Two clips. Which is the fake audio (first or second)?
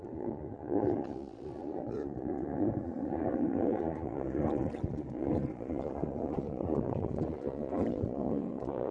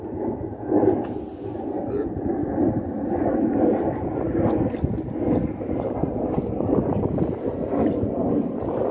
first